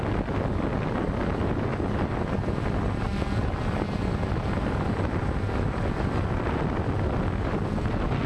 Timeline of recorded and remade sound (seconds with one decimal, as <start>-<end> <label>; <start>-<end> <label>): 0.0-8.3 recorded